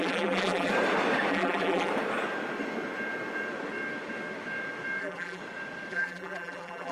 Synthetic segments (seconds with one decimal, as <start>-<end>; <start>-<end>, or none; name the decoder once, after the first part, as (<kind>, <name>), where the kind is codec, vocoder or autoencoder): 0.0-0.7 (vocoder, BigVGAN v2); 1.3-1.9; 5.0-5.4; 5.9-6.9